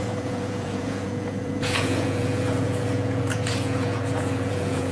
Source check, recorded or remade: remade